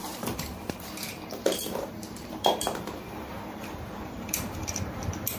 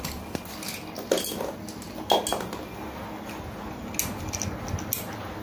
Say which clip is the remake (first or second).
first